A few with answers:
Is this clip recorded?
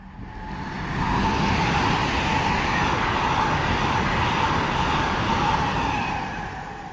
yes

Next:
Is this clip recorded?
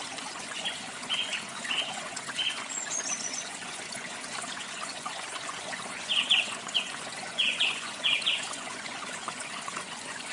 no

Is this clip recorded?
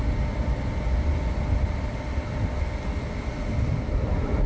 yes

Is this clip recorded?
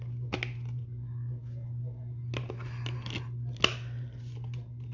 yes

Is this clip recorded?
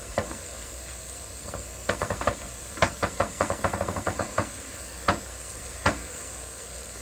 no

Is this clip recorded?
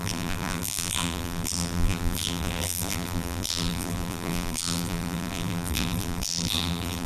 no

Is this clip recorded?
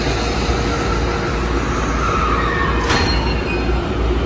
yes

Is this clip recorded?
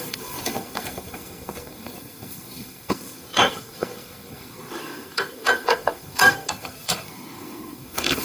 no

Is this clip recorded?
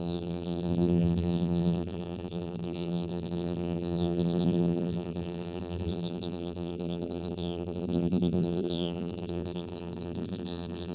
no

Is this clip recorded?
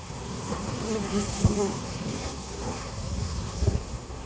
no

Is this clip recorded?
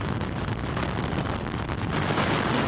yes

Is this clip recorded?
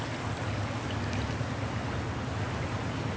yes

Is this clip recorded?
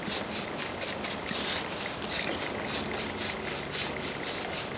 yes